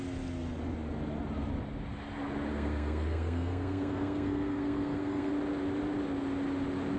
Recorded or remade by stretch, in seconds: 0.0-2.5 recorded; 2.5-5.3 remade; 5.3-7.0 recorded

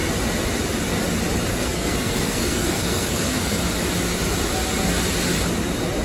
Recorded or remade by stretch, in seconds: 0.0-1.5 recorded; 1.5-3.6 remade; 3.6-6.0 recorded

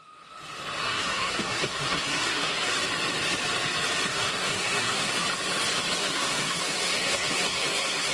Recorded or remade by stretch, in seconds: 0.0-0.8 recorded; 0.8-2.7 remade; 2.7-4.1 recorded; 4.1-5.1 remade; 5.1-6.0 recorded; 6.0-8.1 remade

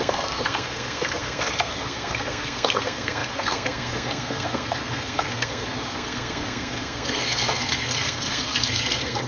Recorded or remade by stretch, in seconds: 0.0-9.3 remade

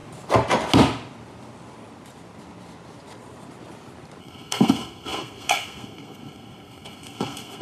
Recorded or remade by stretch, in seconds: 0.0-4.2 recorded; 4.2-7.6 remade

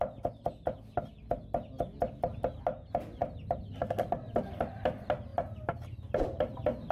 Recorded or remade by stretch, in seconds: 0.0-6.9 recorded